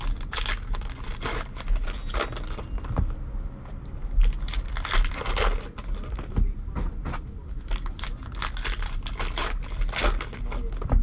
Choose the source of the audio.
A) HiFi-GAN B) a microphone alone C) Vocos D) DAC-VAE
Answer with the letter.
B